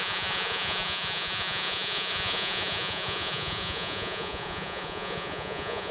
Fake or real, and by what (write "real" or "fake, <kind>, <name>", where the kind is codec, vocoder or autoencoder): fake, vocoder, Vocos